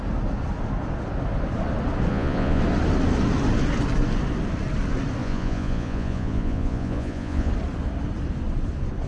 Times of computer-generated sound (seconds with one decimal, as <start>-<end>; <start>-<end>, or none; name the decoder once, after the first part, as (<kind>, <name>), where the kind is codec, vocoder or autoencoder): 2.1-2.6 (vocoder, Vocos); 5.2-7.5